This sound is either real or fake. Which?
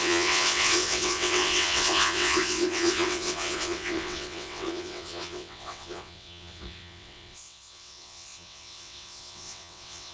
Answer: fake